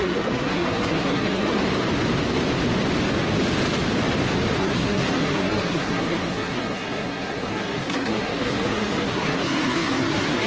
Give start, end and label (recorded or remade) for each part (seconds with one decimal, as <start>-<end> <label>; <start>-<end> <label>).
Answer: 0.0-1.6 remade; 1.6-4.6 recorded; 4.6-10.5 remade